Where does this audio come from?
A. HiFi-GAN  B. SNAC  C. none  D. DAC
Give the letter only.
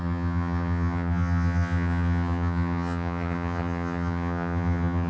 A